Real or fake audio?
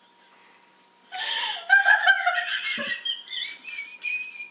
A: real